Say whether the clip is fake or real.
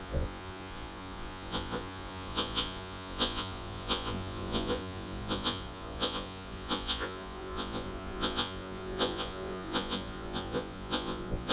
fake